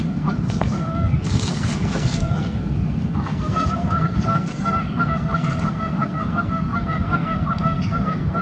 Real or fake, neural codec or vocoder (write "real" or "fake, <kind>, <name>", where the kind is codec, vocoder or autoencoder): fake, codec, SNAC